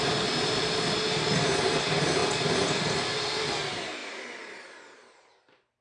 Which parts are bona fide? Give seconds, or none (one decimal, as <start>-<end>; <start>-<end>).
0.0-2.2; 3.5-4.0